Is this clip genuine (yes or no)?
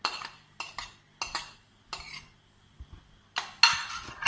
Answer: yes